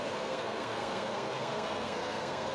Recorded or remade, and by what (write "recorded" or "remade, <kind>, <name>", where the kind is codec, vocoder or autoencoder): remade, codec, SNAC